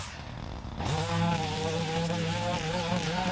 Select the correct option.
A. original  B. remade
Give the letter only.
A